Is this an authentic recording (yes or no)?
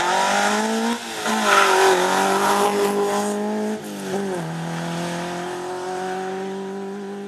yes